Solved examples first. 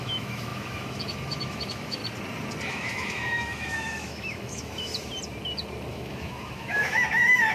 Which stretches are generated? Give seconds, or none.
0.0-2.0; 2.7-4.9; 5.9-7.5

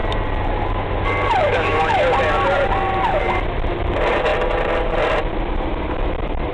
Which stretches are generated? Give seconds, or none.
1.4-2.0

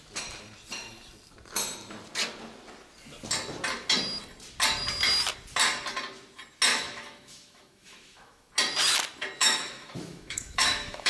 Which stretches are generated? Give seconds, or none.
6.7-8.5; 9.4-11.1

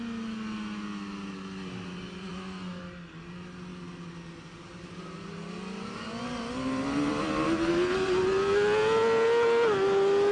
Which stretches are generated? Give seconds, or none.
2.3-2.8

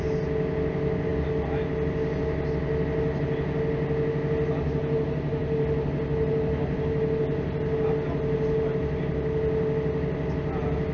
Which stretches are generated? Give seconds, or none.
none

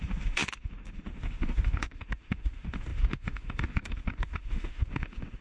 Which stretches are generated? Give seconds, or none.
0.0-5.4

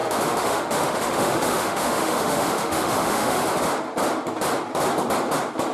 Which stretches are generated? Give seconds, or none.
0.0-3.4